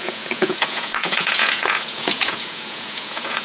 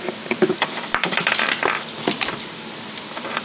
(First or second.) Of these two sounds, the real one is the second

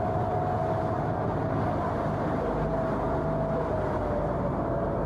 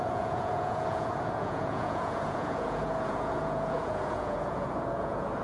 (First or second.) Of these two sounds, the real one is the first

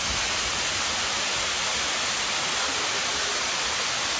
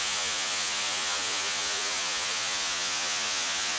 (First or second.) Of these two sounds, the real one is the first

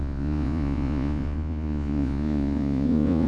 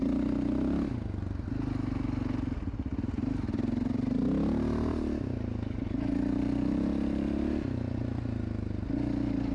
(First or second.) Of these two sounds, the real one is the second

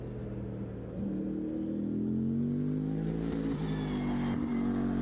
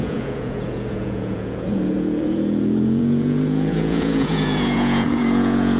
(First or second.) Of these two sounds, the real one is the first